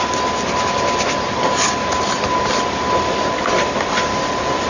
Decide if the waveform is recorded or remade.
recorded